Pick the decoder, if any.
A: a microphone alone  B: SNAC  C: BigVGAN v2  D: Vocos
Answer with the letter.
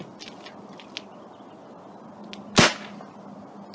A